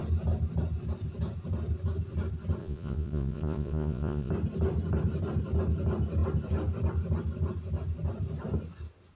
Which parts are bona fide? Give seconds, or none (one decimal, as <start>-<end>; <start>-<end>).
0.0-2.6; 4.3-9.2